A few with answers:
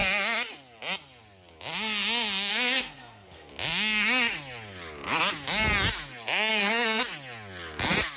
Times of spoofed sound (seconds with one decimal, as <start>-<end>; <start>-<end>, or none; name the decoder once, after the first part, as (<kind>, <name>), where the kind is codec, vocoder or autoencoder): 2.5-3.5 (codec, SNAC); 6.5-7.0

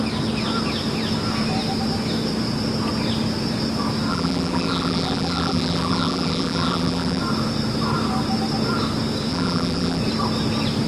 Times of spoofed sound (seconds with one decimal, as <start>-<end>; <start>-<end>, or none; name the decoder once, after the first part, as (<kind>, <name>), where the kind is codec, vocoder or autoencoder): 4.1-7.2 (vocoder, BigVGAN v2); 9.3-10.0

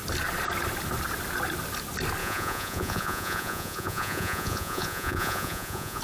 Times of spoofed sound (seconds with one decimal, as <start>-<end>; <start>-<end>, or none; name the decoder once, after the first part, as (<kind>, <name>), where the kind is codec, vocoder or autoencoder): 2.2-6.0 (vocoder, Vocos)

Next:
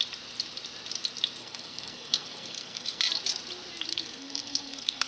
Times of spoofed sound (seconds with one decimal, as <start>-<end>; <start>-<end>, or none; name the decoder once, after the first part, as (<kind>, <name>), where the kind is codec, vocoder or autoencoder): 1.4-3.0 (codec, SNAC); 3.9-5.1